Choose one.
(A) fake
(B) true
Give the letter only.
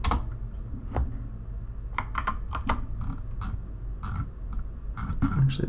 B